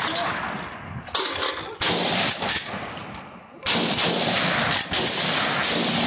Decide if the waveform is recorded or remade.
recorded